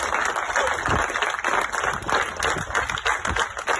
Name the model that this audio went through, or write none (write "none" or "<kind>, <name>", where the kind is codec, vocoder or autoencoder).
none